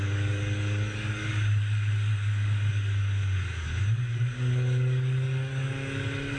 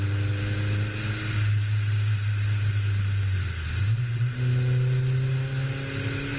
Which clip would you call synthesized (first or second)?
first